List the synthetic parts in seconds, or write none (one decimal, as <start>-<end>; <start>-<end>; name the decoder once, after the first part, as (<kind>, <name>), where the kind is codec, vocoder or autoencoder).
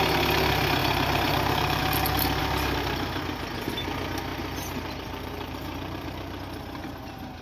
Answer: 0.8-1.8 (vocoder, BigVGAN v2); 2.4-3.2; 4.3-6.4